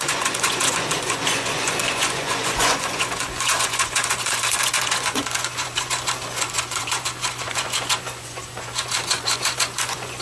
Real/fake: fake